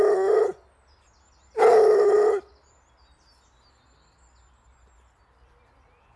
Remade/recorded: recorded